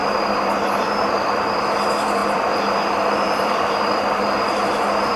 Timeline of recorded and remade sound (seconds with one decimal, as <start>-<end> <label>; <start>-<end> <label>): 0.0-5.2 remade